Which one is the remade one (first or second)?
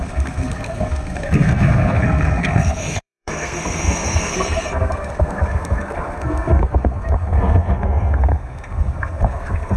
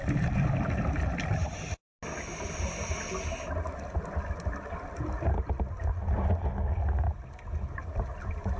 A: first